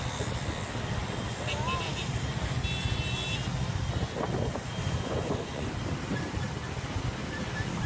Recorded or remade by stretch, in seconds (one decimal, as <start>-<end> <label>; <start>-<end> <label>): 0.0-4.8 recorded; 4.8-5.7 remade; 5.7-7.9 recorded